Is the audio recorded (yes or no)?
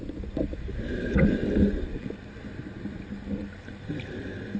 yes